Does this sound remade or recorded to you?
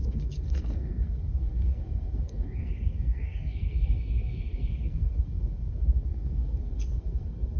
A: remade